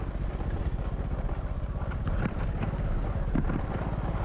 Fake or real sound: real